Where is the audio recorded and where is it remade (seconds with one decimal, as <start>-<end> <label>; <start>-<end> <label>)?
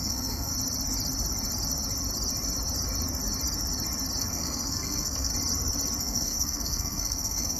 0.0-0.5 remade; 0.5-4.2 recorded; 4.2-5.3 remade; 5.3-6.0 recorded; 6.0-7.6 remade